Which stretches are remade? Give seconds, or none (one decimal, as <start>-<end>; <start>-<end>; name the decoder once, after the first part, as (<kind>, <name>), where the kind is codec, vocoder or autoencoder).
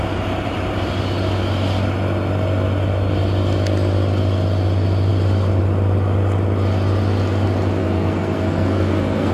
7.8-9.3 (codec, SNAC)